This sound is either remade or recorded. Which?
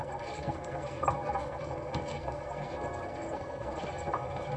remade